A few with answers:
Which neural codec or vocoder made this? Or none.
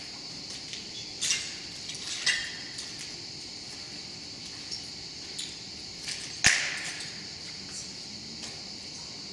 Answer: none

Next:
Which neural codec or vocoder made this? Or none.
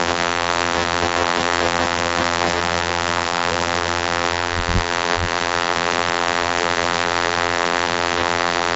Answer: vocoder, BigVGAN v2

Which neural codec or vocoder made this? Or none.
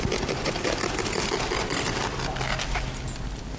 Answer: none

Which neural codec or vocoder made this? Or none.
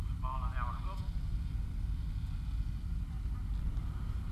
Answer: none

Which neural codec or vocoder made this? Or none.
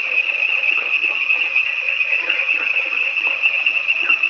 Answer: vocoder, HiFi-GAN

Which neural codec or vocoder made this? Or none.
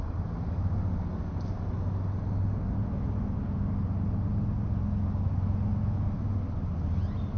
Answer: none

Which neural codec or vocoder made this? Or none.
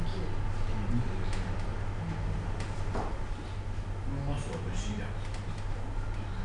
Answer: none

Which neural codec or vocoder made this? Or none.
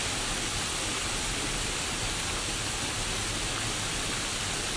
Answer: none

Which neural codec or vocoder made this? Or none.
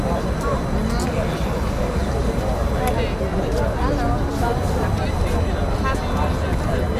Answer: none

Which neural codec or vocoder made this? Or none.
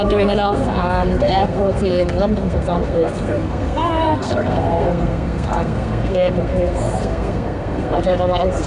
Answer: codec, SNAC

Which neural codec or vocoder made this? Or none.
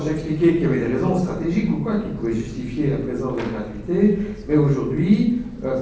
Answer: none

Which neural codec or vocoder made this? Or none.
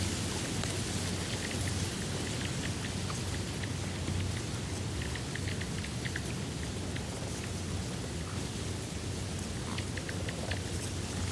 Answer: none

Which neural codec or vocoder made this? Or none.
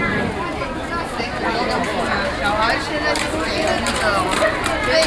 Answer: none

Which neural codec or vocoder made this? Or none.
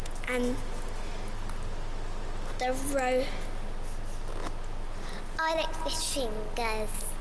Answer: none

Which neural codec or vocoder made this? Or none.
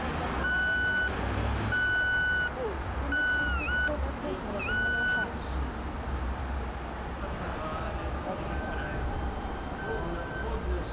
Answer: none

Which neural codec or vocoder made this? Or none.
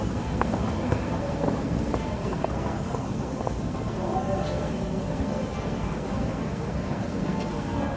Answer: codec, SNAC